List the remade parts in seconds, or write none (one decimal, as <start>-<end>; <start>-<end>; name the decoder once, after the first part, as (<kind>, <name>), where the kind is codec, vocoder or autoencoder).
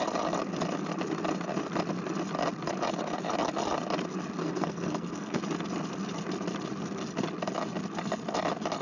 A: 4.4-5.4 (codec, SNAC)